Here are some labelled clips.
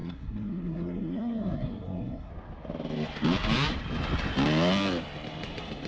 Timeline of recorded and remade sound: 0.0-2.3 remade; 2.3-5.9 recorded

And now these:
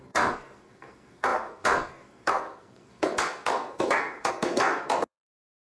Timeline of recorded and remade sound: 0.0-5.7 remade

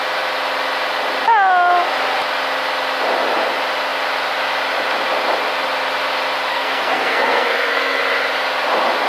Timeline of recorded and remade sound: 0.0-6.5 recorded; 6.5-8.0 remade; 8.0-9.1 recorded

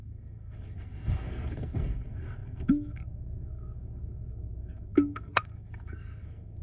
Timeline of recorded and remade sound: 0.0-6.6 remade

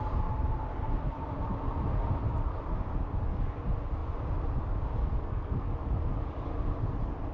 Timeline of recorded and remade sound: 0.0-5.0 recorded; 5.0-5.7 remade; 5.7-7.3 recorded

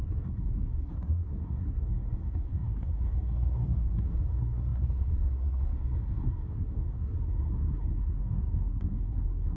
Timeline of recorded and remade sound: 0.0-9.6 remade

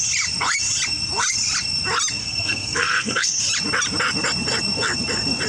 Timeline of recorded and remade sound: 0.0-2.2 recorded; 2.2-3.4 remade; 3.4-5.5 recorded

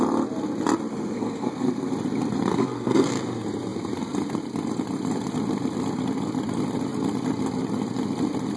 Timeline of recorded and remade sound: 0.0-0.9 recorded; 0.9-1.9 remade; 1.9-2.5 recorded; 2.5-3.1 remade; 3.1-8.6 recorded